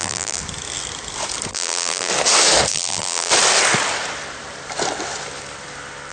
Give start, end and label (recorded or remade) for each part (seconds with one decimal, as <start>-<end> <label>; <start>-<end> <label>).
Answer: 0.0-0.4 remade; 0.4-1.5 recorded; 1.5-2.1 remade; 2.1-2.7 recorded; 2.7-3.3 remade; 3.3-6.1 recorded